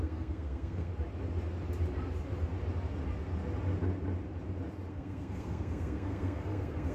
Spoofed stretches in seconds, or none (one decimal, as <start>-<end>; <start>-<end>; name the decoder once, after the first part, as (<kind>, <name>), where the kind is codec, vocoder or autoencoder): 0.0-0.9 (codec, SNAC); 4.9-6.9